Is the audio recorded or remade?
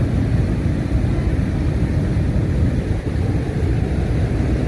recorded